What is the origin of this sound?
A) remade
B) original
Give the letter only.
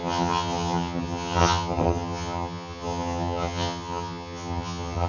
A